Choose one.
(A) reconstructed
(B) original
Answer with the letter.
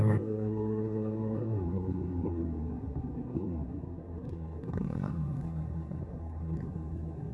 A